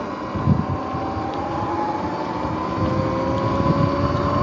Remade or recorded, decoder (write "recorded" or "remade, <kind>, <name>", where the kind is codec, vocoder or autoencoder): recorded